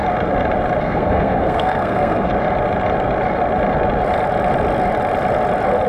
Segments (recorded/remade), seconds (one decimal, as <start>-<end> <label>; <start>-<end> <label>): 0.0-0.8 recorded; 0.8-2.3 remade; 2.3-5.9 recorded